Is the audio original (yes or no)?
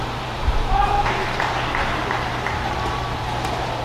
no